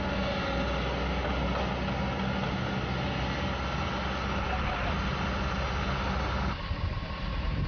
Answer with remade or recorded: recorded